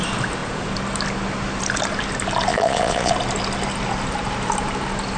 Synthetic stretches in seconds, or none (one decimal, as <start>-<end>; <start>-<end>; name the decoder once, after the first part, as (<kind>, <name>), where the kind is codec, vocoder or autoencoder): 2.5-3.1 (vocoder, Vocos)